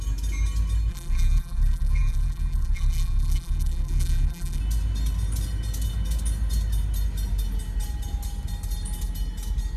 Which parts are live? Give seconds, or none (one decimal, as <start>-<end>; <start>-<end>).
0.0-0.9; 4.6-9.8